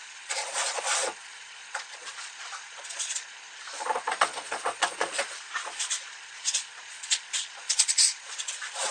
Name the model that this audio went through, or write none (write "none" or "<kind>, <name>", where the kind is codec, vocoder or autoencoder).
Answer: vocoder, Vocos